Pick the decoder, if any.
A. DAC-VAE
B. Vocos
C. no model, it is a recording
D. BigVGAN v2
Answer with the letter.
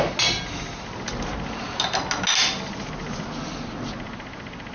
C